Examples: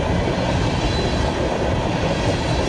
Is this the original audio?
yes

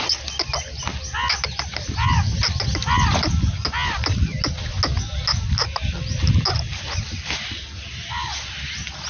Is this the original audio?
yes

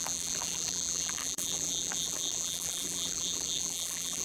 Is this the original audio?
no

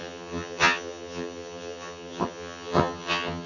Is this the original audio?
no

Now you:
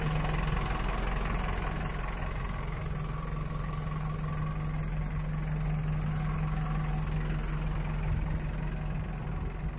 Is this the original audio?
yes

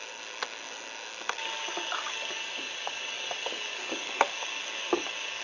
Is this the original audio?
no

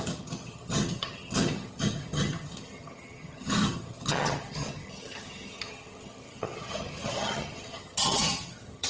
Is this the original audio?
no